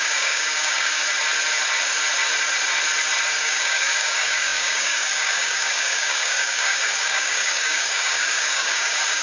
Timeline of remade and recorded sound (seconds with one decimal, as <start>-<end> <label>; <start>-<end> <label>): 0.0-1.0 remade; 1.0-3.4 recorded; 3.4-9.2 remade